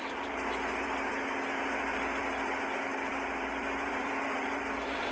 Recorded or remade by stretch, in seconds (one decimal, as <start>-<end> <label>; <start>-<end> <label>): 0.0-5.1 remade